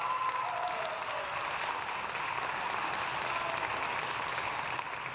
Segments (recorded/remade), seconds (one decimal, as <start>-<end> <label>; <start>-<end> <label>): 0.0-5.1 recorded